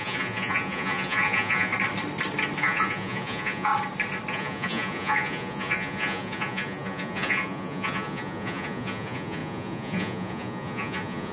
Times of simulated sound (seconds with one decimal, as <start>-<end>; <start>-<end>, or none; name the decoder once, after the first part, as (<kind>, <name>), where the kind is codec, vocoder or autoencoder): 0.0-1.7 (vocoder, Vocos); 2.6-3.7; 4.3-11.3